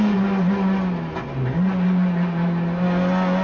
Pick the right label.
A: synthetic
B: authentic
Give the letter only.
B